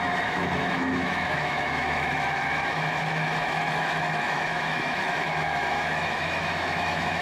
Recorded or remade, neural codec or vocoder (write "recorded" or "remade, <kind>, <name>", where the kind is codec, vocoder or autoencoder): remade, autoencoder, DAC-VAE